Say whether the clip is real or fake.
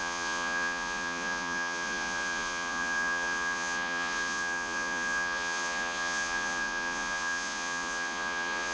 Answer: fake